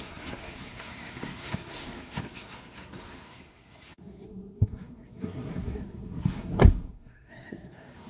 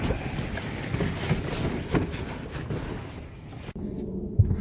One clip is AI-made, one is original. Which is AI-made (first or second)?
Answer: first